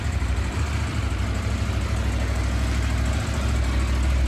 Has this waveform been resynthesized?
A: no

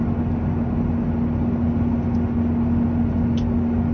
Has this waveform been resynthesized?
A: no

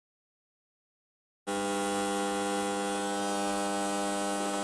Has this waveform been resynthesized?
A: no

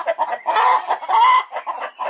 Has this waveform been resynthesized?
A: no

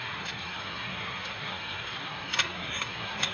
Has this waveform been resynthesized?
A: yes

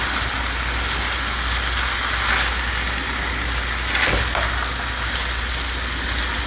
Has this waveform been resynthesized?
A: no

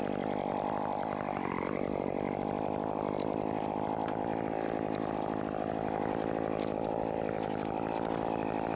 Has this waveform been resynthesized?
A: no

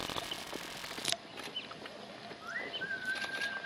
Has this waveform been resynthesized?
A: no